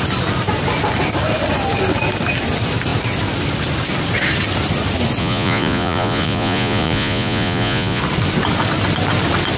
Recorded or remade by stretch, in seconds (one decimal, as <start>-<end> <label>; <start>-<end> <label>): 0.0-5.2 recorded; 5.2-8.0 remade; 8.0-9.6 recorded